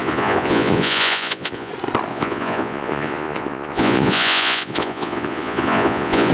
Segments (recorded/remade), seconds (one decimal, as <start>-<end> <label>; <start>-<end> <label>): 0.0-1.7 remade; 1.7-2.1 recorded; 2.1-6.3 remade